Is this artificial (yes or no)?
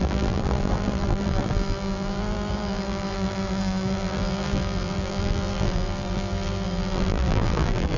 yes